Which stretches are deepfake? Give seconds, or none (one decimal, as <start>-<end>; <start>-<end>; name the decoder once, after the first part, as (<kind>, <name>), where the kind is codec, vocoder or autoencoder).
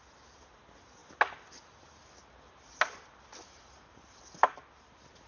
none